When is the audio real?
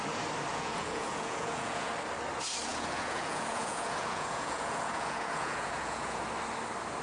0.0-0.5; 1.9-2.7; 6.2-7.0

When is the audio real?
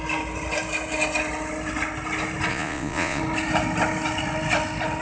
0.0-2.5; 3.2-5.0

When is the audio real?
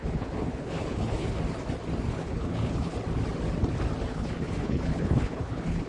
1.4-2.1; 3.0-4.1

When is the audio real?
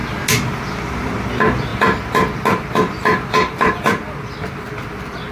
0.0-5.3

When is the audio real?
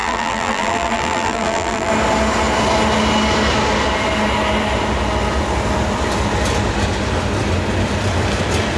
1.9-8.8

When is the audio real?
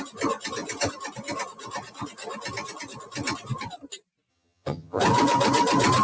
0.0-4.3; 5.0-6.0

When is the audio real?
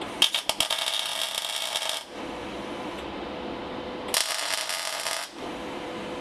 0.0-6.2